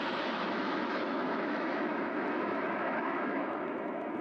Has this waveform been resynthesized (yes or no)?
yes